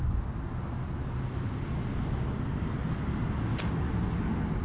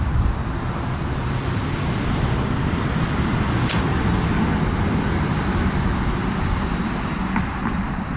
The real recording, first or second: first